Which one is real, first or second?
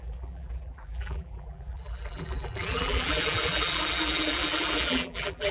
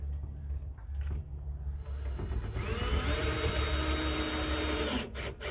second